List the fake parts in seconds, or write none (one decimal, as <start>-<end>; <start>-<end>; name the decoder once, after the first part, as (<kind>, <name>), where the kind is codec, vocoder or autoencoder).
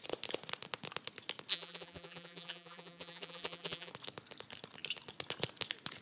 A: 1.5-3.9 (vocoder, BigVGAN v2)